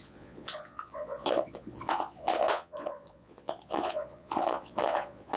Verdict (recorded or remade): remade